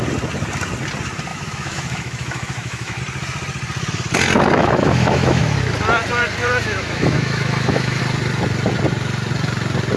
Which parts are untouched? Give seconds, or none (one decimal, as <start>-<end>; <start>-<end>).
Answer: 0.0-1.3; 3.0-4.6; 5.4-6.4; 8.0-10.0